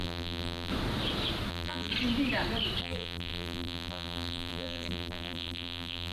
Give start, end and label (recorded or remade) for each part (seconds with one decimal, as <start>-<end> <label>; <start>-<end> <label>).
0.0-0.7 remade; 0.7-1.5 recorded; 1.5-1.9 remade; 1.9-2.8 recorded; 2.8-6.1 remade

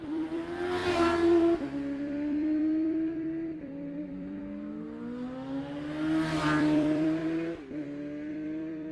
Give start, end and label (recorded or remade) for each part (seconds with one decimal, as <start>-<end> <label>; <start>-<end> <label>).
0.0-0.8 remade; 0.8-1.6 recorded; 1.6-4.4 remade; 4.4-6.4 recorded; 6.4-7.2 remade; 7.2-8.3 recorded; 8.3-8.9 remade

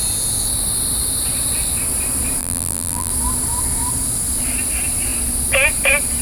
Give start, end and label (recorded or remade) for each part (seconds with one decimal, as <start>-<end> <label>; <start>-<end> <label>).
0.0-2.4 recorded; 2.4-3.1 remade; 3.1-6.2 recorded

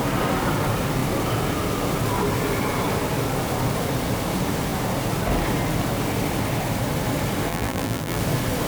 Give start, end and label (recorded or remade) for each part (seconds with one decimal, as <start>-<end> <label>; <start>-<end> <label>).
0.0-7.5 recorded; 7.5-8.2 remade; 8.2-8.7 recorded

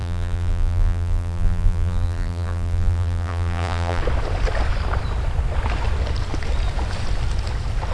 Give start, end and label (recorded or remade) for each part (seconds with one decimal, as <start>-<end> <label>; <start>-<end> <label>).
0.0-4.0 remade; 4.0-7.9 recorded